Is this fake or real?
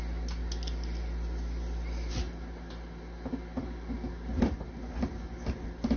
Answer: real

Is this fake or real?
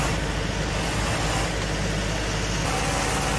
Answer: real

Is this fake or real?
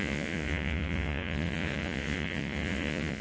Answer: fake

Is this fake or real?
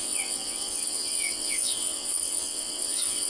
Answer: fake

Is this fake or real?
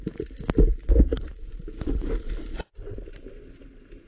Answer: fake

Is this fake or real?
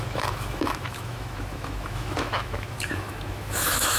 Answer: fake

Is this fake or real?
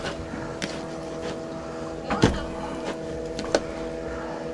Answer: real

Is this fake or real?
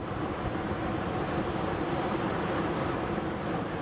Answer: fake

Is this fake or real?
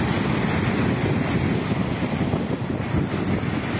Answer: real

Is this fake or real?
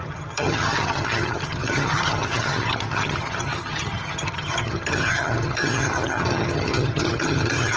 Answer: fake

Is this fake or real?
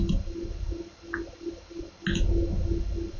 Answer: real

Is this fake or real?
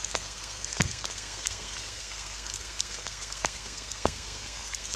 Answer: fake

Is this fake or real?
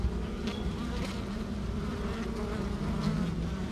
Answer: real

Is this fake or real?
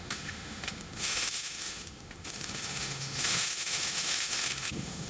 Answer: fake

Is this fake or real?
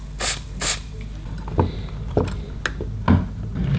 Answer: real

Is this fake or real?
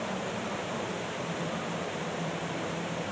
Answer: fake